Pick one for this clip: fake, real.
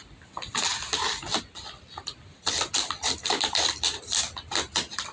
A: real